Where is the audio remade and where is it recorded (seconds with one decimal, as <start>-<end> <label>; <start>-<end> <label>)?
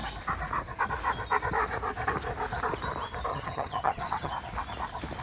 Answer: 0.0-3.3 recorded; 3.3-4.3 remade; 4.3-5.2 recorded